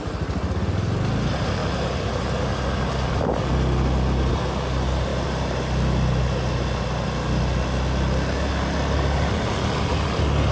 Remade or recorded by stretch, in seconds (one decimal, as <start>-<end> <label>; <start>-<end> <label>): 0.0-10.5 recorded